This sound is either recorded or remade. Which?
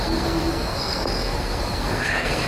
remade